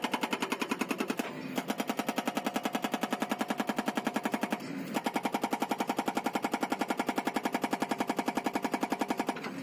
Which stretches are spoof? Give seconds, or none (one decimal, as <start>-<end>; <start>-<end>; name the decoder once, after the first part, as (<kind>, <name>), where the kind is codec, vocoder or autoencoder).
0.0-1.6 (vocoder, BigVGAN v2); 4.3-9.6